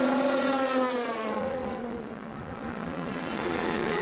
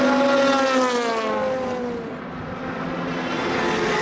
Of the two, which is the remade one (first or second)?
first